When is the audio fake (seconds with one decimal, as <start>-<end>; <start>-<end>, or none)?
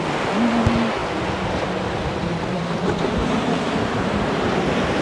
3.2-5.0